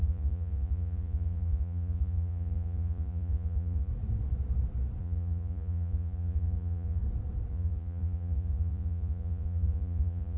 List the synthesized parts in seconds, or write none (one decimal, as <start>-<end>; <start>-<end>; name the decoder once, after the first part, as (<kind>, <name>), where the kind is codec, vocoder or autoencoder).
0.0-3.9 (vocoder, Vocos); 5.0-7.0; 7.5-10.4